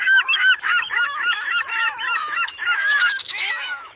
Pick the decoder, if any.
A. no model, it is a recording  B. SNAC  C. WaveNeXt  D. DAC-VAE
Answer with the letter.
D